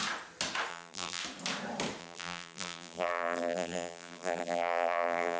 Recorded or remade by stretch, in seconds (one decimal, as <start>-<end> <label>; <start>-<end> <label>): 0.0-0.7 recorded; 0.7-1.2 remade; 1.2-2.0 recorded; 2.0-5.4 remade